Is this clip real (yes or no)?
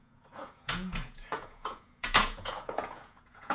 no